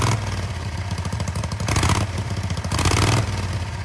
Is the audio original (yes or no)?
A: yes